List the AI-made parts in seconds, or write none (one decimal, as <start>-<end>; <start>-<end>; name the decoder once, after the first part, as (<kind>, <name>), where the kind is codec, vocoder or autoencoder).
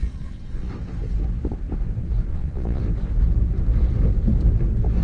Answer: 0.0-0.7 (vocoder, Vocos); 2.3-2.8